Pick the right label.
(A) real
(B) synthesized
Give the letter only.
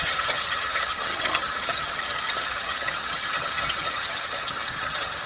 B